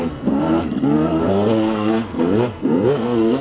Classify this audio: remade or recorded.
remade